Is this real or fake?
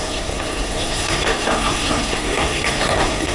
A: fake